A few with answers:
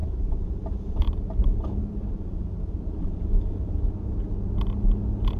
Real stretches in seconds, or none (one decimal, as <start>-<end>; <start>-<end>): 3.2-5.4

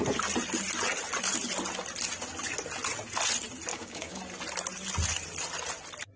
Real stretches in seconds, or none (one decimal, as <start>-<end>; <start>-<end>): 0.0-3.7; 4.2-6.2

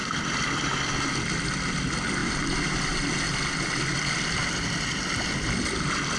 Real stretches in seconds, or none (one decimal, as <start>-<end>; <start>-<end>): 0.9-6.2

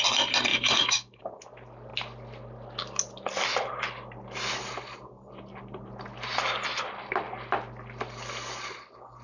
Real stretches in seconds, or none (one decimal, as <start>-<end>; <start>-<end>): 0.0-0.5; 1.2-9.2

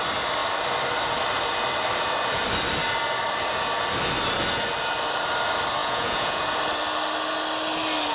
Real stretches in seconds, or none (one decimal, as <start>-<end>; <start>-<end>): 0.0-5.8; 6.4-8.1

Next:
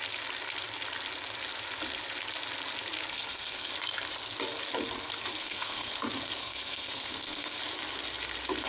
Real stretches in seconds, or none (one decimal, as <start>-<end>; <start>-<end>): 0.0-3.1; 3.7-5.4; 5.9-6.4; 7.6-8.7